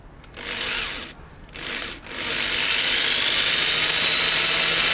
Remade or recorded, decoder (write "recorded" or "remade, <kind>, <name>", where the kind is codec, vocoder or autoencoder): recorded